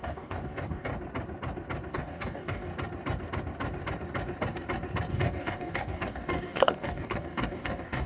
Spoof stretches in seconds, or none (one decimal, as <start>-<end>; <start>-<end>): 0.0-0.9; 1.9-2.7; 5.1-8.1